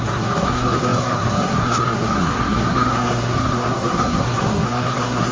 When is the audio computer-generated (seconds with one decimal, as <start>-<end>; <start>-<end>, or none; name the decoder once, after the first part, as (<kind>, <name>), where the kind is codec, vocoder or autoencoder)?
0.0-5.3 (codec, SNAC)